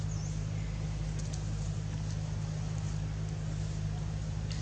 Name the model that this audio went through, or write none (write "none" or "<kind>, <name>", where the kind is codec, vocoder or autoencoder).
none